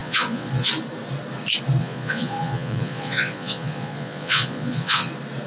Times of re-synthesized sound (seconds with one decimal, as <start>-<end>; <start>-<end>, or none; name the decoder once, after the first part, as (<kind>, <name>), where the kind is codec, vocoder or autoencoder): 0.0-0.7 (vocoder, Vocos); 1.8-5.1